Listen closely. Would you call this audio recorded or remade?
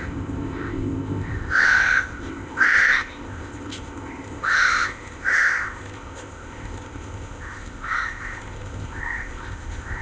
remade